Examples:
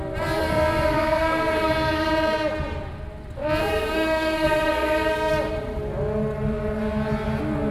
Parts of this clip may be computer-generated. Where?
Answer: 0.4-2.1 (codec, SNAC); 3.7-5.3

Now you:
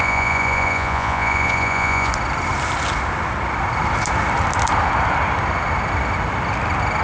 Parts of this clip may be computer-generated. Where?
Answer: 0.0-2.1 (vocoder, Vocos)

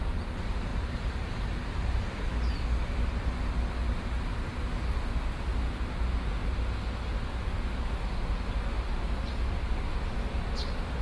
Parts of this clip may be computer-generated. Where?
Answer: 0.7-1.3 (vocoder, BigVGAN v2)

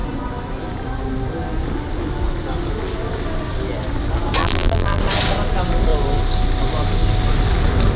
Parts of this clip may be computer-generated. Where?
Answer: 4.4-5.0 (vocoder, BigVGAN v2)